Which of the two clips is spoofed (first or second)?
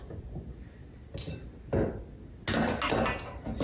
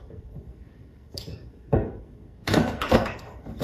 second